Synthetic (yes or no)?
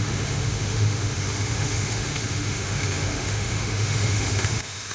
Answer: yes